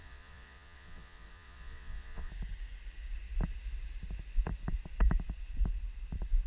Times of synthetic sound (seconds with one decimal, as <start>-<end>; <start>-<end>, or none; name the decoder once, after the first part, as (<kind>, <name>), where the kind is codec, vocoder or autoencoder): 0.0-2.3 (vocoder, Vocos)